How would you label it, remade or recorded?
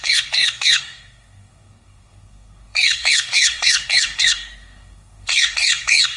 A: remade